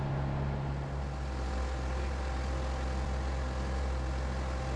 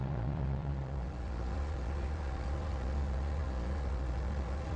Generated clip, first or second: second